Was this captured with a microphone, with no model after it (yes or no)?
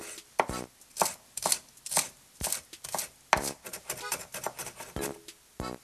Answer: yes